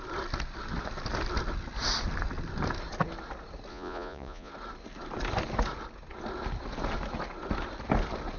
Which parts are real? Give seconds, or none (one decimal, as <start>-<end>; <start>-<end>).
0.0-3.7; 4.5-8.4